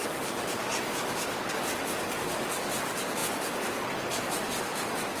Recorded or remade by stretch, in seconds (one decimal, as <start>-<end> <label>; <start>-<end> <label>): 0.0-5.2 remade